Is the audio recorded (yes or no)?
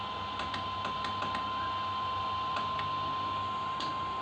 yes